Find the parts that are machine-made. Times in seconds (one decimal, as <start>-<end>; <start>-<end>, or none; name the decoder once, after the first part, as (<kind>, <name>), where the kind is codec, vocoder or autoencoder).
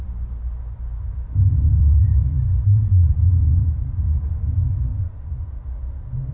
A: 0.9-4.4 (vocoder, BigVGAN v2); 4.9-5.4